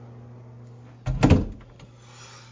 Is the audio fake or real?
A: real